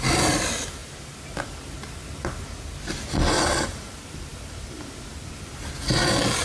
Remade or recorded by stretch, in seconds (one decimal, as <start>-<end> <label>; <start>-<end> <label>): 0.0-6.4 recorded